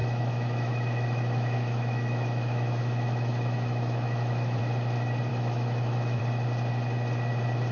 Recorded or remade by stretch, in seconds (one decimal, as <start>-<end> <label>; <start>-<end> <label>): 0.0-4.6 remade; 4.6-5.3 recorded; 5.3-6.2 remade; 6.2-7.7 recorded